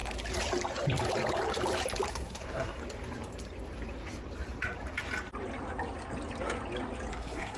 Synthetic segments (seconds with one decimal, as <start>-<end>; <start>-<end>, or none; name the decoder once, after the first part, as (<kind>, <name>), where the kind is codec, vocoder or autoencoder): 2.1-2.8 (codec, SNAC); 7.1-7.6